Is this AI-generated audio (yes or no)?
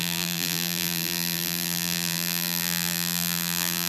yes